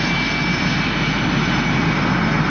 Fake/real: real